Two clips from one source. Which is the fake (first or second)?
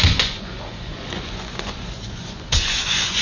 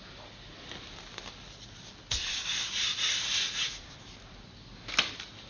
first